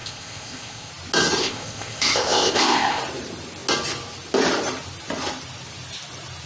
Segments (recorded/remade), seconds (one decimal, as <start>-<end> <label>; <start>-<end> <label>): 0.0-0.9 remade; 0.9-1.4 recorded; 1.4-3.0 remade; 3.0-6.5 recorded